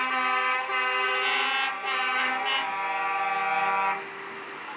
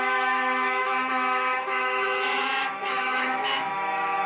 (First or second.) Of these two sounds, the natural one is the first